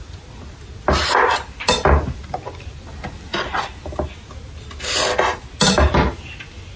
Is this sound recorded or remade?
recorded